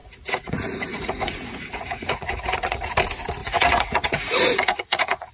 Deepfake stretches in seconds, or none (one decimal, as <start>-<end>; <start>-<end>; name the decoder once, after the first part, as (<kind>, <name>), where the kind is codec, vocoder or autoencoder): 0.0-2.9 (vocoder, Vocos); 3.4-5.3